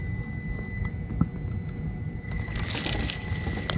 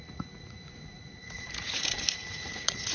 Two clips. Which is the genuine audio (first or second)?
first